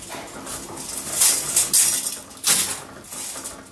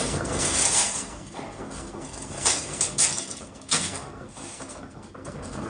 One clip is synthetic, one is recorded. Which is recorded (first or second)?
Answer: first